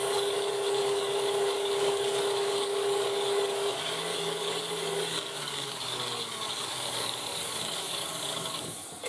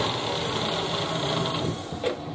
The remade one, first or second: first